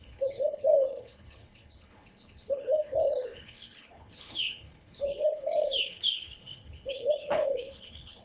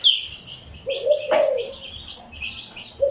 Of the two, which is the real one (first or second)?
second